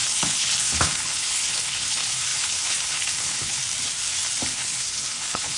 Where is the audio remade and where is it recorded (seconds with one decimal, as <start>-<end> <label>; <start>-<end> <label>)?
0.0-3.6 remade; 3.6-4.5 recorded; 4.5-5.6 remade